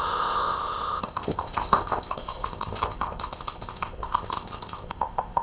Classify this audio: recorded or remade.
remade